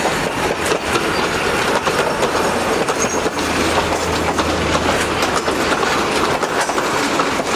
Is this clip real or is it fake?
real